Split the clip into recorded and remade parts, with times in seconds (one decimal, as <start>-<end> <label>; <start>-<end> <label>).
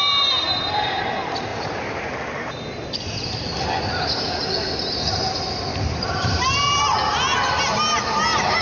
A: 0.0-1.5 recorded; 1.5-2.1 remade; 2.1-5.7 recorded; 5.7-6.8 remade; 6.8-8.6 recorded